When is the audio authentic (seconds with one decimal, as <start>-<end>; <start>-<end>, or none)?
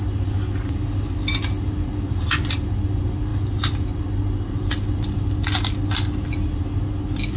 0.0-7.4